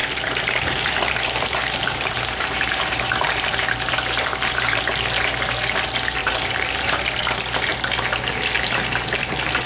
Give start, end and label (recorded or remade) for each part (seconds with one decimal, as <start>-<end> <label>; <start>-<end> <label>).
0.0-4.8 remade; 4.8-6.2 recorded; 6.2-7.0 remade; 7.0-9.7 recorded